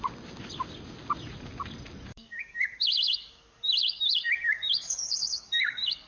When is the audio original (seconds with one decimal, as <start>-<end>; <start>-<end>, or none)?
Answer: 0.0-2.1